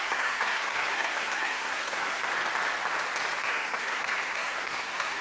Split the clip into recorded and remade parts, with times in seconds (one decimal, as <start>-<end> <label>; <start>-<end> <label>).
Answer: 0.0-2.3 remade; 2.3-3.4 recorded; 3.4-5.2 remade